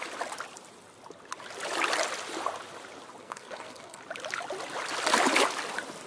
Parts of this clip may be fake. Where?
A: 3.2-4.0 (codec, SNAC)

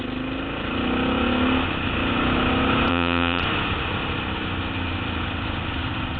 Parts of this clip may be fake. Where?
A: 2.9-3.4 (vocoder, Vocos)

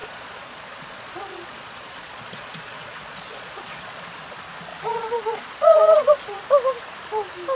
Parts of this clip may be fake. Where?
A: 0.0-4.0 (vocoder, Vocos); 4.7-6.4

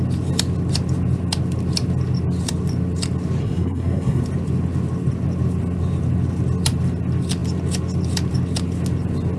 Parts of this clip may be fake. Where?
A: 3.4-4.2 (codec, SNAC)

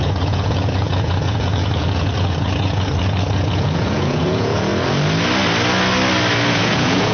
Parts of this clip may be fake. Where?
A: 0.0-4.7 (vocoder, Vocos); 6.5-7.1

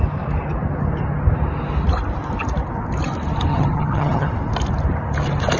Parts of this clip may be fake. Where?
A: 3.5-4.3 (vocoder, HiFi-GAN)

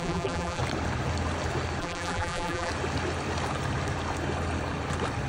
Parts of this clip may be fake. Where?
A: 0.0-0.6 (vocoder, BigVGAN v2); 1.8-2.7